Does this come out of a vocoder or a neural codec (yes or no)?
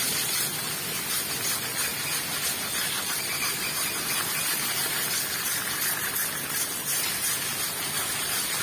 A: no